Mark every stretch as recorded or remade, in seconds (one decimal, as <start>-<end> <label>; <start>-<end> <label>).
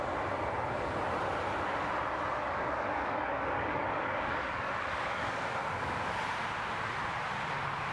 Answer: 0.0-2.4 recorded; 2.4-6.2 remade; 6.2-7.9 recorded